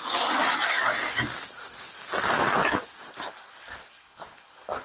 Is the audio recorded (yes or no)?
yes